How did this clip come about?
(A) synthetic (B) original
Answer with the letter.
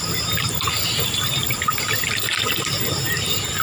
B